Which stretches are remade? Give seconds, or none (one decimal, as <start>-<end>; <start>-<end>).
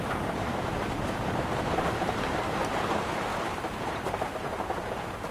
0.0-3.3; 3.8-5.3